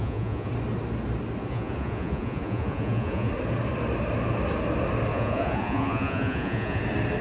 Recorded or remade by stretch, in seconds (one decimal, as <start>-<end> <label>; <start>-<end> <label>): 0.0-0.5 remade; 0.5-1.4 recorded; 1.4-3.3 remade; 3.3-5.1 recorded; 5.1-6.8 remade; 6.8-7.2 recorded